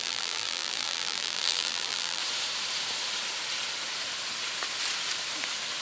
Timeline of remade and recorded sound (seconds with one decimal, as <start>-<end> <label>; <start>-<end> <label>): 0.0-2.2 remade; 2.2-5.8 recorded